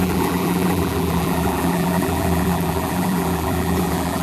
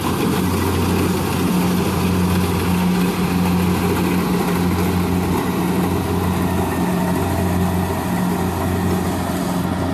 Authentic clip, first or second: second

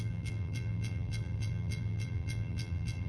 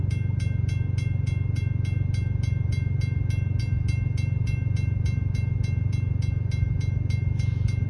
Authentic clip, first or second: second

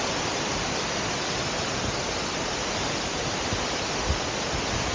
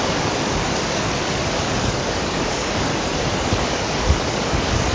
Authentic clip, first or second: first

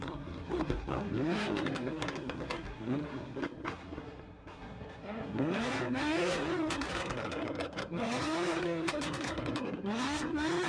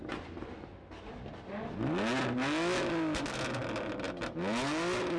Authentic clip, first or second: second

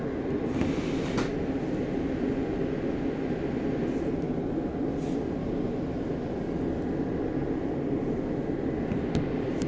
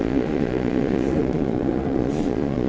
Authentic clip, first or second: first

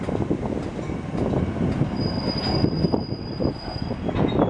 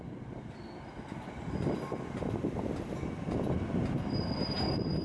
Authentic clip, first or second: first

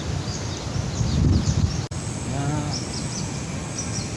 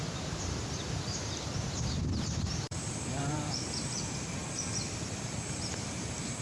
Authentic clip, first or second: first